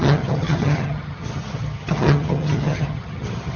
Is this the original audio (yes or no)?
no